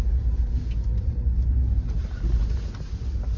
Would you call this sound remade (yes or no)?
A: no